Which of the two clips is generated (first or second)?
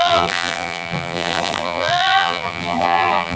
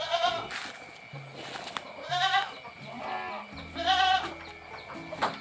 first